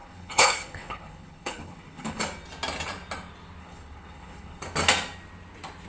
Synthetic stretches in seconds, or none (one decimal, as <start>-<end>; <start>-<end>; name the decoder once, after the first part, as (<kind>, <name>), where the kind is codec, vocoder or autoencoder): 0.0-2.2 (codec, HILCodec); 3.6-4.6